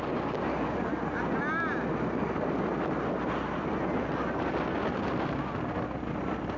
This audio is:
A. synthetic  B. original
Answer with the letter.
B